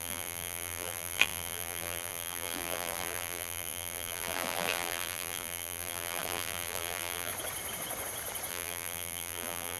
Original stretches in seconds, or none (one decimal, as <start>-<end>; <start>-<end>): 7.3-8.5